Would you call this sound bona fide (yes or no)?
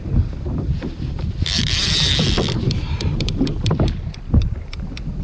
no